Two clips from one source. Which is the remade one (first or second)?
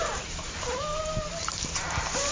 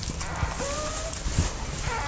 first